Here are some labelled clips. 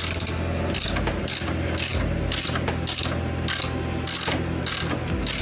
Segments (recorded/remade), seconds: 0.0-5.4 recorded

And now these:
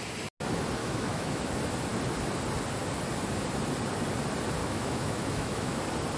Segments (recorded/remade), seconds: 0.0-0.8 recorded; 0.8-1.4 remade; 1.4-4.6 recorded; 4.6-5.8 remade; 5.8-6.2 recorded